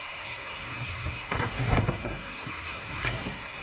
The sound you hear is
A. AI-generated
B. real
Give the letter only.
A